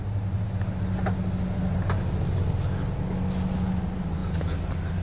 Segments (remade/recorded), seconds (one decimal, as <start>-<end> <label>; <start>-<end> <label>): 0.0-5.0 recorded